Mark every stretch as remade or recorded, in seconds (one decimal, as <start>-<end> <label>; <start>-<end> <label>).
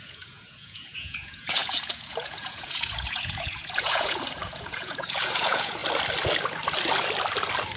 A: 0.0-5.8 remade; 5.8-7.8 recorded